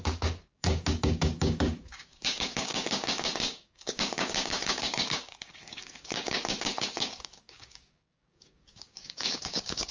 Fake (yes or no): yes